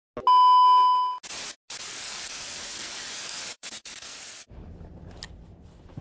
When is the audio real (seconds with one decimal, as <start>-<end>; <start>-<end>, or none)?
0.0-1.9; 4.5-6.0